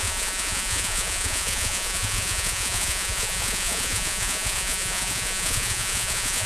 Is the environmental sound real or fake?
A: fake